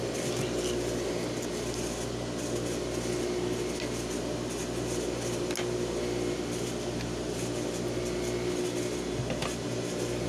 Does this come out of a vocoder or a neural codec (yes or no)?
no